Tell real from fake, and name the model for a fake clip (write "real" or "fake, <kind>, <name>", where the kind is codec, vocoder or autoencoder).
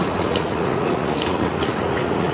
fake, vocoder, Vocos